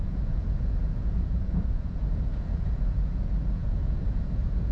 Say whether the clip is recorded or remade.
remade